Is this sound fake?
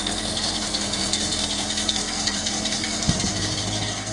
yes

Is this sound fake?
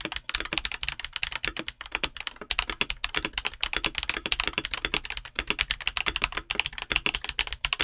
no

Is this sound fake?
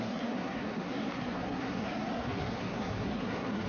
yes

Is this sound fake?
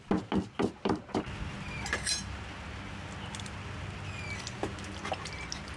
no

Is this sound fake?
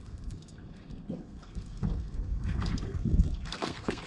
yes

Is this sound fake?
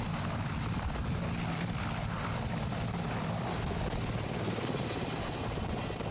no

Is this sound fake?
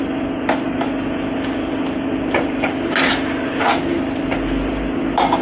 no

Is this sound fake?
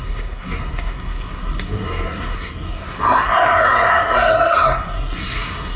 yes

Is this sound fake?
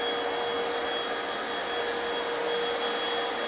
no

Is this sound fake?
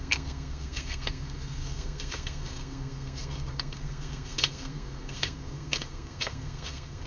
yes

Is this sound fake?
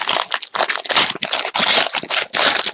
no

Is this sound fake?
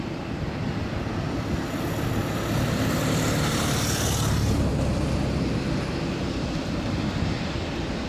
no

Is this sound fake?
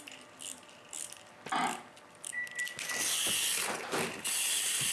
no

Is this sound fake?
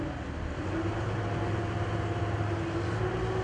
no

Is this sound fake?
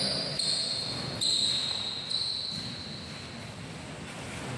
no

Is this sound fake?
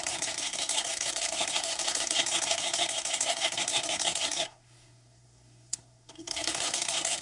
yes